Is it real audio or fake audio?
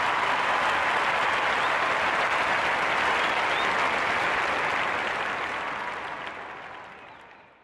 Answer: real